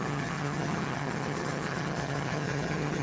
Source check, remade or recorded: remade